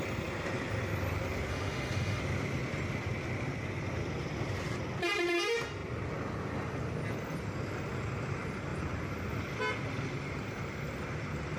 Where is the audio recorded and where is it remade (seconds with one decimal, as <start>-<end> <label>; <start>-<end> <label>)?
0.0-1.5 recorded; 1.5-2.2 remade; 2.2-11.6 recorded